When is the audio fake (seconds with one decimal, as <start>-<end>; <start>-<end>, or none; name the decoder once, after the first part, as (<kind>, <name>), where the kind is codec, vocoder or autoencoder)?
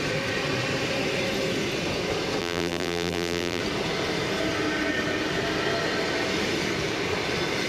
2.4-3.6 (vocoder, BigVGAN v2)